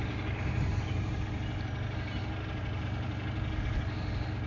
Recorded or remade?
recorded